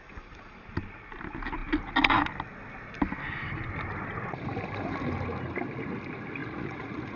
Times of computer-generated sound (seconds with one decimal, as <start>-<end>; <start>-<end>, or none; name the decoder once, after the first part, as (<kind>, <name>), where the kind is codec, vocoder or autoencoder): 6.4-7.2 (vocoder, Vocos)